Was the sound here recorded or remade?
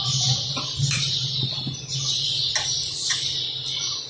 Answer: recorded